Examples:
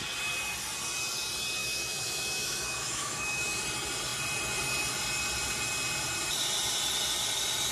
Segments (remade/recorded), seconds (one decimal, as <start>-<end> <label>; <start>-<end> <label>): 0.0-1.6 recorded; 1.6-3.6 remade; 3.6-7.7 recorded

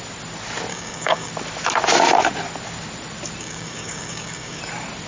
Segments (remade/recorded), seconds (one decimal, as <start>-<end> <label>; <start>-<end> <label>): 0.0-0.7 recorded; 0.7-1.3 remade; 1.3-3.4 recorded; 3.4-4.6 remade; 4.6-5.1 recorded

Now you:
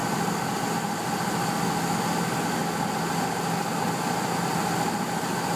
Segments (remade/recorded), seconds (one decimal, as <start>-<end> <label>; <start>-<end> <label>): 0.0-5.6 recorded